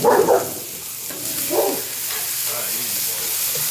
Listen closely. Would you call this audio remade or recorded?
recorded